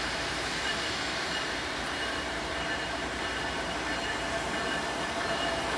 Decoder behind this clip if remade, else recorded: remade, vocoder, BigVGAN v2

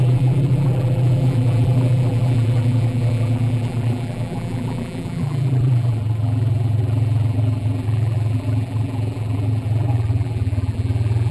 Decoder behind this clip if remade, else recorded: remade, vocoder, BigVGAN v2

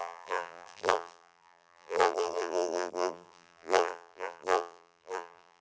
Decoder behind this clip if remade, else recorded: remade, vocoder, BigVGAN v2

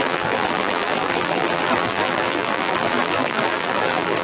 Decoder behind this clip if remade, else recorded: remade, vocoder, BigVGAN v2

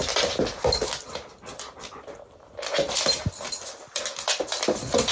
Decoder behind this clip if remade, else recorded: recorded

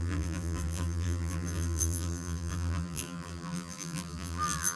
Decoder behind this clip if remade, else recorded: remade, vocoder, BigVGAN v2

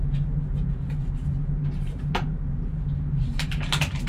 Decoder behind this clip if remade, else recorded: remade, vocoder, BigVGAN v2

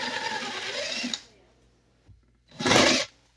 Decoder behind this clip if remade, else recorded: recorded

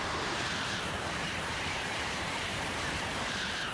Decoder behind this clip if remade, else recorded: remade, vocoder, BigVGAN v2